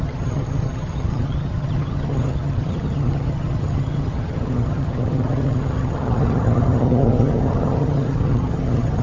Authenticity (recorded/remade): remade